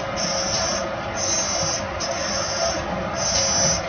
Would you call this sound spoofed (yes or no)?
no